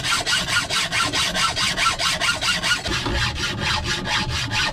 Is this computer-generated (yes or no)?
no